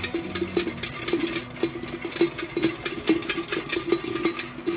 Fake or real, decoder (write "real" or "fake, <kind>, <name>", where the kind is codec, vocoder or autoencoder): real